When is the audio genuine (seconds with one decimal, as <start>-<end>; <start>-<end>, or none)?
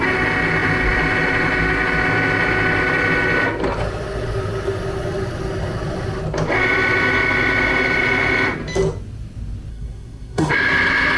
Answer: 0.0-9.7; 10.5-11.2